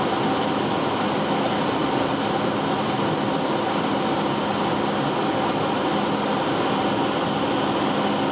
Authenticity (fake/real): real